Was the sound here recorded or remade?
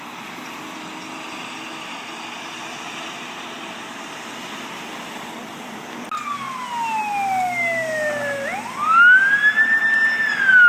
recorded